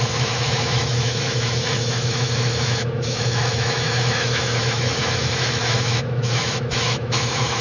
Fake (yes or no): yes